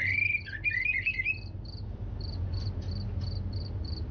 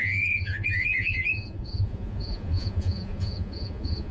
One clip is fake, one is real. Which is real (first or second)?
first